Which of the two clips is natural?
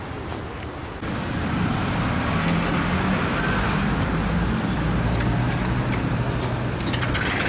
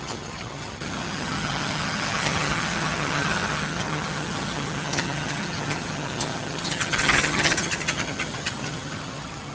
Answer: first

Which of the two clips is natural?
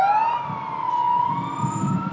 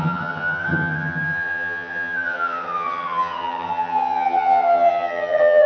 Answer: first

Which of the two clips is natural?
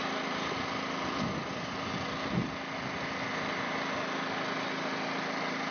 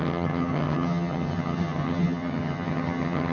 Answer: first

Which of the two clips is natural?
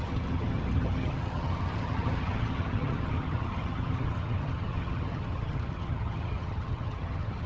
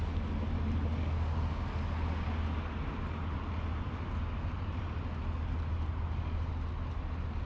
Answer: second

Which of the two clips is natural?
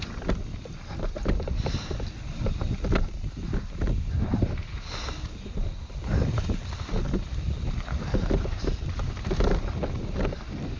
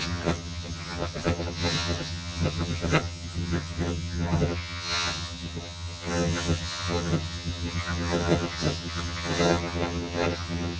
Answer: first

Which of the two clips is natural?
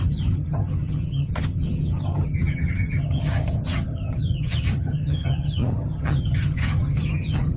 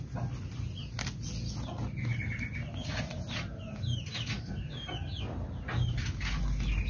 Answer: second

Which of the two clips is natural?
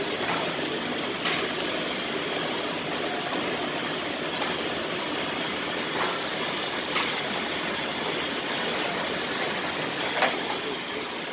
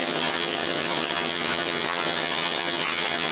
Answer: first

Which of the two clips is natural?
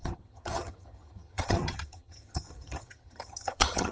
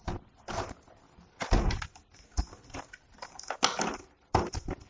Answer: second